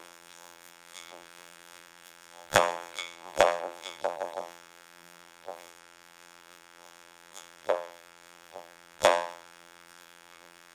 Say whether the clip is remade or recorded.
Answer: remade